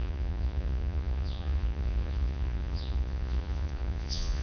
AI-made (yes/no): yes